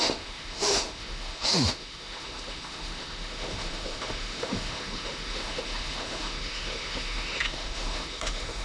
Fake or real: fake